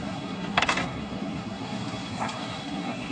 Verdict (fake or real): fake